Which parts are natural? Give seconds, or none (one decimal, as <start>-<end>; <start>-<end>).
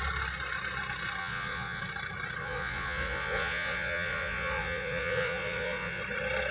0.0-1.2; 1.8-2.4; 6.0-6.5